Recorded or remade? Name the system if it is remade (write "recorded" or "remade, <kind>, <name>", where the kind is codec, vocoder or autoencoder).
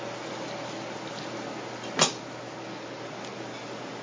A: recorded